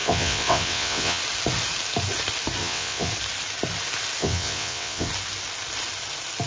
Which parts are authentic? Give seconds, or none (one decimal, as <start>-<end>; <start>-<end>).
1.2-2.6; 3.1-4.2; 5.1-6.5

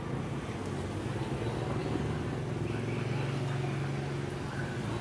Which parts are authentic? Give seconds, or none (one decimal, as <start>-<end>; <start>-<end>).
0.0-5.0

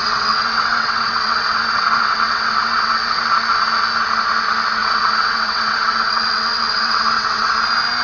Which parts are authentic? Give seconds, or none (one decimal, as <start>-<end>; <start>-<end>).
3.2-4.8; 7.5-8.0